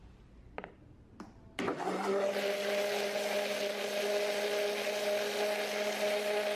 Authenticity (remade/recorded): recorded